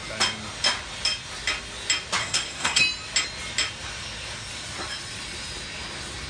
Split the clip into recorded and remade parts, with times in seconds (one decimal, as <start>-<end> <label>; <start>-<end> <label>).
0.0-2.2 recorded; 2.2-2.8 remade; 2.8-6.3 recorded